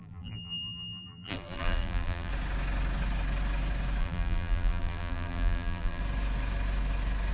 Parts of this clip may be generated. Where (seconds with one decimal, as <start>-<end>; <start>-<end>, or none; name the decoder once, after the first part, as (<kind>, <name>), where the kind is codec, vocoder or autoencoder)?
0.0-2.3 (vocoder, BigVGAN v2); 4.0-6.0

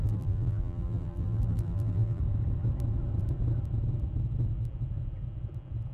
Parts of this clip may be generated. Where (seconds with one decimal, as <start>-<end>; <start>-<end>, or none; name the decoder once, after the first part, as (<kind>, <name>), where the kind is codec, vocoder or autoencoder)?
0.0-2.2 (vocoder, BigVGAN v2)